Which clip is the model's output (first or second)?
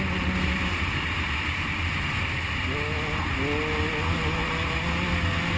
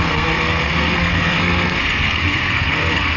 second